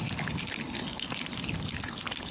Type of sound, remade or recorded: recorded